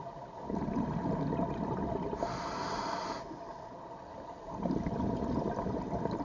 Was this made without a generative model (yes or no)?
yes